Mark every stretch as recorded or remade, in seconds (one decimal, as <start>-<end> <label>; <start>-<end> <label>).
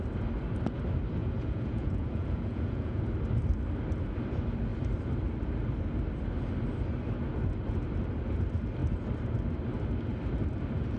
0.0-1.2 recorded; 1.2-3.0 remade; 3.0-11.0 recorded